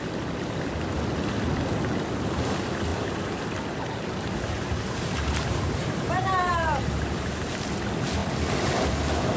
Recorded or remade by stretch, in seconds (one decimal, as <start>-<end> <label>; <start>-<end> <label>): 0.0-2.9 recorded; 2.9-7.6 remade; 7.6-9.4 recorded